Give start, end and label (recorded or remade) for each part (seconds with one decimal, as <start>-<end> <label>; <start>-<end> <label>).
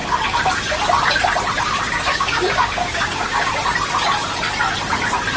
0.0-2.1 recorded; 2.1-3.5 remade; 3.5-5.4 recorded